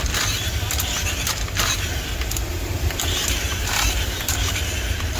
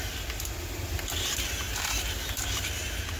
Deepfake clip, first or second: first